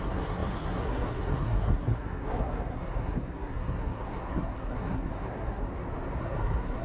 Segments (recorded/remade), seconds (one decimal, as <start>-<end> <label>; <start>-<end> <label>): 0.0-5.7 remade; 5.7-6.2 recorded; 6.2-6.8 remade